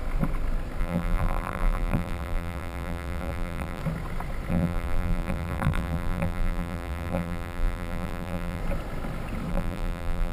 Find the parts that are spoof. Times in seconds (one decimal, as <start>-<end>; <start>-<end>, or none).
0.8-3.8; 4.5-8.6; 9.5-10.3